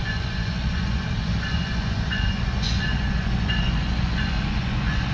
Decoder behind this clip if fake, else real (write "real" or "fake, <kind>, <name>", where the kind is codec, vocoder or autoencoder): fake, vocoder, Vocos